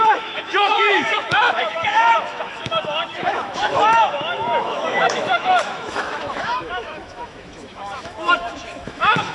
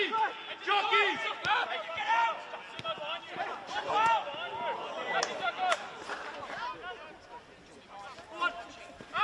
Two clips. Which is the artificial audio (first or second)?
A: first